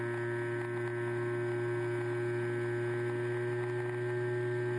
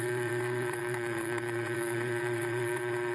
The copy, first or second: second